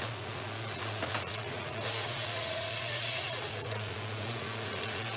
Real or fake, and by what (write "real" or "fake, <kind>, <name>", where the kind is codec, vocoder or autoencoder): fake, vocoder, Vocos